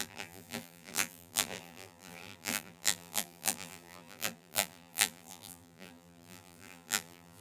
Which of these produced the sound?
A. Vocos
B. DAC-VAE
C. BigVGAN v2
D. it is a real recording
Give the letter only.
C